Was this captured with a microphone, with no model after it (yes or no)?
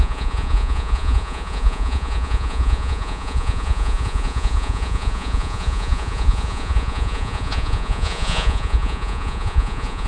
no